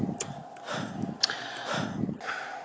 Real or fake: real